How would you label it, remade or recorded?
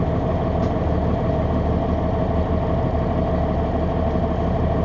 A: recorded